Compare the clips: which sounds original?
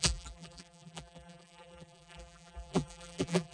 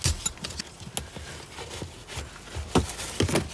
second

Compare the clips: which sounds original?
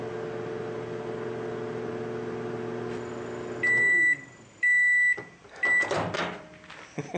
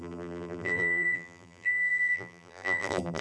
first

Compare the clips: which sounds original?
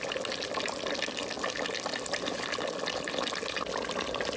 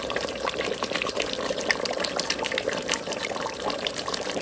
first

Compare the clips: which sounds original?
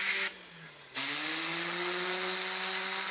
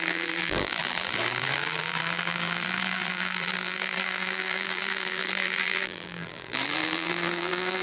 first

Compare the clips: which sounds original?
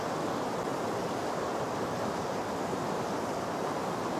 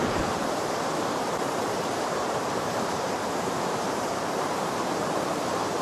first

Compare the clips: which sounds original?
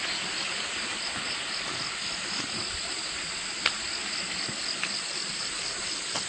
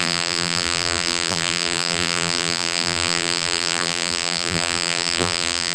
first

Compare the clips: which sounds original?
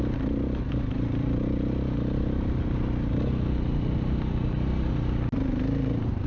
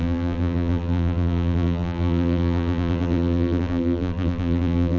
first